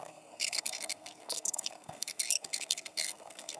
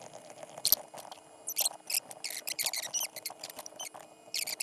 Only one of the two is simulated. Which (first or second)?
first